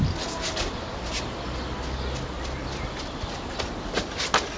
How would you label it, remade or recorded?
recorded